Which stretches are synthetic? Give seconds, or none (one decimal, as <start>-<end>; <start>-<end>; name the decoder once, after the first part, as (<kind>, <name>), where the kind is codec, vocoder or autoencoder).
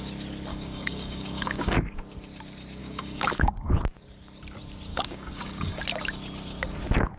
0.5-1.8 (codec, DAC); 2.8-3.7; 4.9-5.8